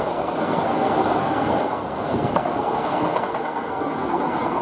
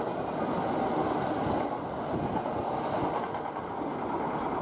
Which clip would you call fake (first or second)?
first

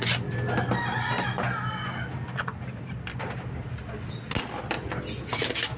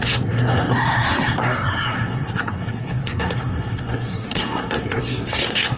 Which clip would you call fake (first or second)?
second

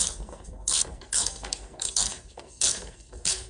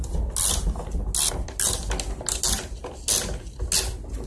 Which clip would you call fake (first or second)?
first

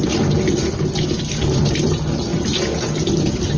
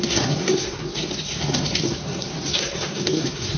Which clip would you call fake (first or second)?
second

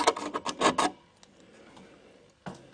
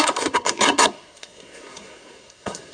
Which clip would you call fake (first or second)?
second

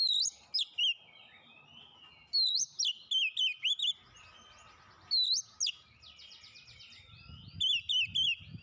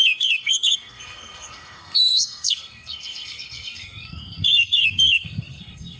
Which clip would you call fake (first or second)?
second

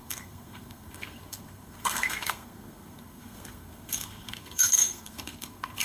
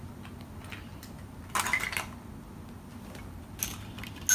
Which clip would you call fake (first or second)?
first